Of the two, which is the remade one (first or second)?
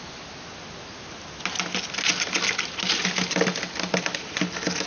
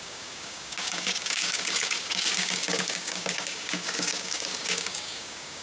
second